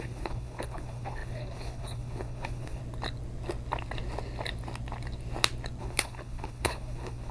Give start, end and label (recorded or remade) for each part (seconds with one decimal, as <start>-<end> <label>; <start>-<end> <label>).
0.0-2.8 remade; 2.8-5.8 recorded; 5.8-7.3 remade